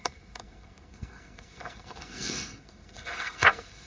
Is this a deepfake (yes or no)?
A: yes